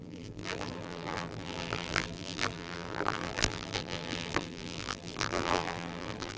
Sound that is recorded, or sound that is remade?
remade